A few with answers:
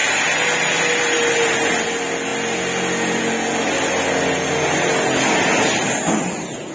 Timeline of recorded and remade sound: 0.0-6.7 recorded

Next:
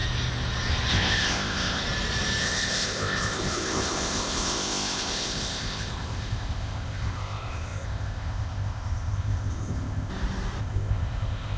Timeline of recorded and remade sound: 0.0-0.9 recorded; 0.9-1.8 remade; 1.8-2.4 recorded; 2.4-10.1 remade; 10.1-10.6 recorded; 10.6-11.6 remade

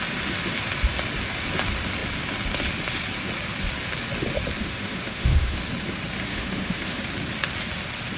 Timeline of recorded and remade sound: 0.0-4.6 recorded; 4.6-5.6 remade; 5.6-6.3 recorded; 6.3-7.0 remade; 7.0-8.2 recorded

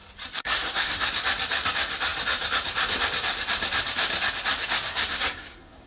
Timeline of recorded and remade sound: 0.0-0.4 recorded; 0.4-1.1 remade; 1.1-4.9 recorded; 4.9-5.9 remade

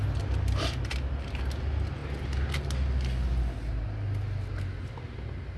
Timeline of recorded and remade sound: 0.0-5.6 recorded